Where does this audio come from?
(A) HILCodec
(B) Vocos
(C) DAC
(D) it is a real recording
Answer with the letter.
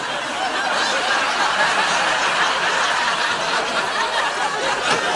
D